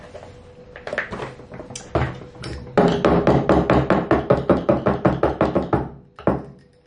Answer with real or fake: real